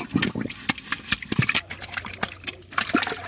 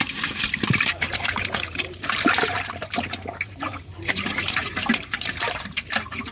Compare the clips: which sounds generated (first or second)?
second